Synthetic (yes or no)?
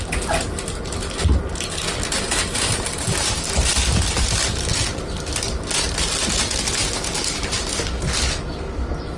no